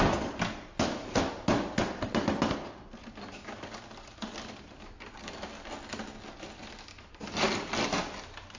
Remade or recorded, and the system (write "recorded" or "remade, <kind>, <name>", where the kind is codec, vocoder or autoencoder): recorded